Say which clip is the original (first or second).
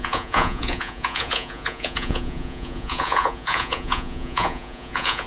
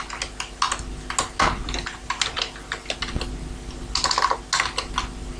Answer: second